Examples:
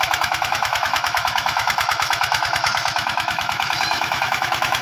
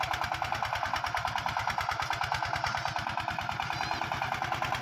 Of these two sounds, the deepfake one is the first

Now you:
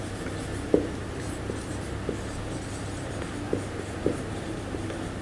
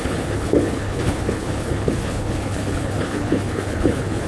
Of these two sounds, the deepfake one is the second